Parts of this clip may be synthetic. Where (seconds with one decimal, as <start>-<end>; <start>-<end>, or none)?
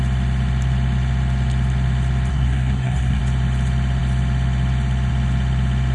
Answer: 2.3-3.2